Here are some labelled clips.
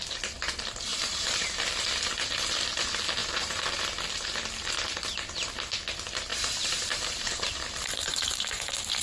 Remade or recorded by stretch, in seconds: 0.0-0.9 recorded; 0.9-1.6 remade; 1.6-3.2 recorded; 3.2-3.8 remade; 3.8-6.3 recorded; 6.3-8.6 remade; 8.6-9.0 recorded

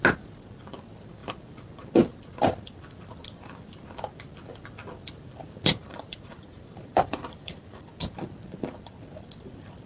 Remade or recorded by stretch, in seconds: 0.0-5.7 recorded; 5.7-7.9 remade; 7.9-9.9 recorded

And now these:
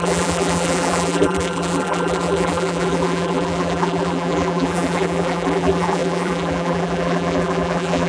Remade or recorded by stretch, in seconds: 0.0-8.1 remade

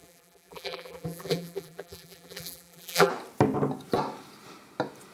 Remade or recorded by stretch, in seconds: 0.0-3.1 remade; 3.1-5.1 recorded

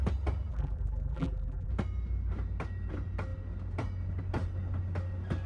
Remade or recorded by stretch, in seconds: 0.0-0.5 recorded; 0.5-1.7 remade; 1.7-5.5 recorded